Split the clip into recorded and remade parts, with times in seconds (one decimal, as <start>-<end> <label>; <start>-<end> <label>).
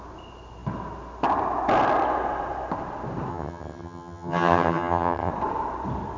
0.0-3.3 recorded; 3.3-5.3 remade; 5.3-6.2 recorded